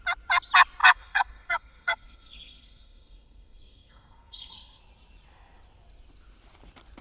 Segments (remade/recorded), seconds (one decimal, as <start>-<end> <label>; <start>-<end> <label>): 0.0-0.8 recorded; 0.8-4.8 remade; 4.8-7.0 recorded